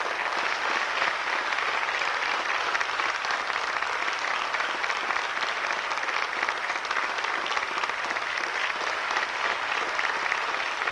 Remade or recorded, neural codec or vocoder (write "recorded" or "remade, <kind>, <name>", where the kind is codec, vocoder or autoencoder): recorded